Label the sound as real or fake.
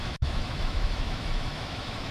fake